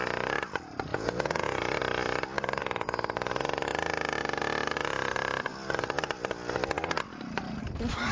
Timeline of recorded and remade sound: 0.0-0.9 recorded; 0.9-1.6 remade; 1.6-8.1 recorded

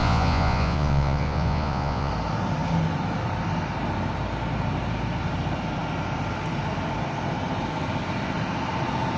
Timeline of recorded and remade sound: 0.0-2.1 remade; 2.1-9.2 recorded